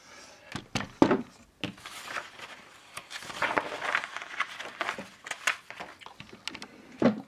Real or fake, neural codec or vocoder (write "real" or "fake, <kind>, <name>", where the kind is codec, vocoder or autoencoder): real